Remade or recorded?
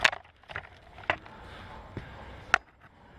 recorded